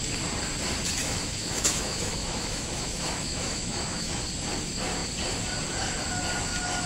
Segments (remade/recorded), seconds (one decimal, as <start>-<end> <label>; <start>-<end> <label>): 0.0-1.0 recorded; 1.0-4.2 remade; 4.2-6.9 recorded